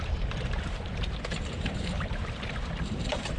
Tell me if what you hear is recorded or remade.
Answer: remade